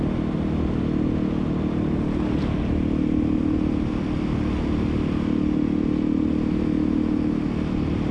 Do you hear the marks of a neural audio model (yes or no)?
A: no